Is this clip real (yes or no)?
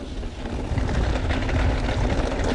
yes